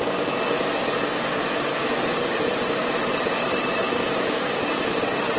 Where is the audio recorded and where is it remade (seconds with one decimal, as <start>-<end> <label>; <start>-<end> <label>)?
0.0-1.8 recorded; 1.8-5.0 remade; 5.0-5.4 recorded